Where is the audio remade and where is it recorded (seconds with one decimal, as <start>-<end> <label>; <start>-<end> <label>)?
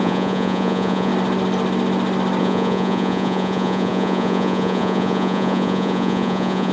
0.0-1.1 remade; 1.1-2.4 recorded; 2.4-6.7 remade